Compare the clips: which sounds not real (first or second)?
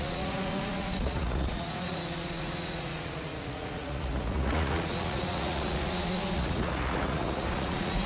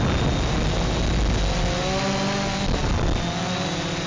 first